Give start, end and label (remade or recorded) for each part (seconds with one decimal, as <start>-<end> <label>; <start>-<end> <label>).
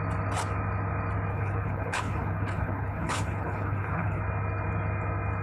0.0-1.3 recorded; 1.3-4.2 remade; 4.2-5.4 recorded